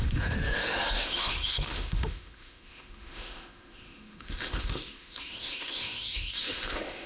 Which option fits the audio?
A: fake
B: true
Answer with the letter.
A